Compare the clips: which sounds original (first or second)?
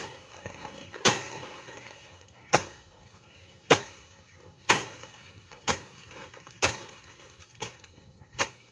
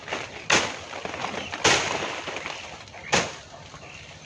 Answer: second